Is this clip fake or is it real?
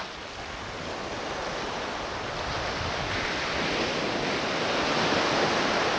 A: real